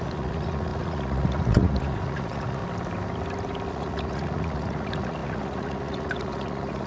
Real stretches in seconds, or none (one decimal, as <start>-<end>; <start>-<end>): 2.6-3.7